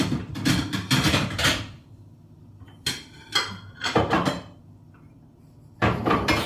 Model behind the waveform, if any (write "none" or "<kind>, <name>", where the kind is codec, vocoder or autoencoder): none